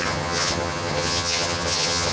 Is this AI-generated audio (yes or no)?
yes